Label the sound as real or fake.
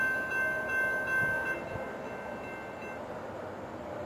real